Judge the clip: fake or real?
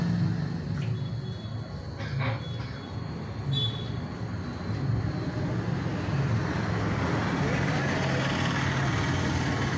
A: real